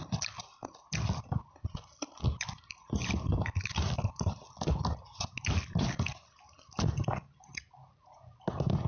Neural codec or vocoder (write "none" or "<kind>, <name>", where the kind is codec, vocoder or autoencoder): none